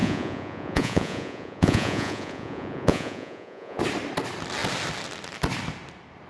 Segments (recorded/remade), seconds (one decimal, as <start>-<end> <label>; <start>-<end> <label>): 0.0-3.8 remade; 3.8-6.3 recorded